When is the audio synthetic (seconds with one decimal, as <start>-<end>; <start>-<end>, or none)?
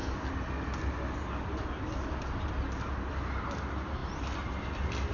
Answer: none